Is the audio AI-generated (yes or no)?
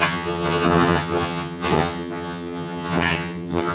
yes